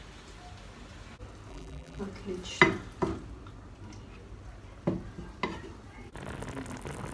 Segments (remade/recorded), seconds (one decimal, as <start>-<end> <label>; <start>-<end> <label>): 0.0-1.5 recorded; 1.5-2.0 remade; 2.0-7.1 recorded